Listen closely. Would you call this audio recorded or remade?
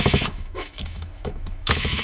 remade